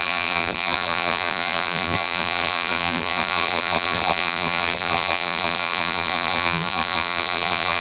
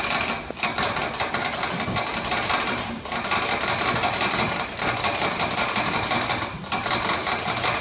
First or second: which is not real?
first